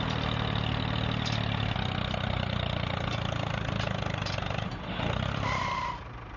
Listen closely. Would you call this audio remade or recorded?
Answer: recorded